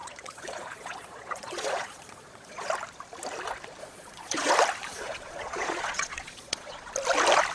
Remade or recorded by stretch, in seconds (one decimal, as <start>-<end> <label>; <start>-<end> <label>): 0.0-2.7 remade; 2.7-3.8 recorded; 3.8-4.5 remade; 4.5-4.9 recorded; 4.9-6.9 remade; 6.9-7.5 recorded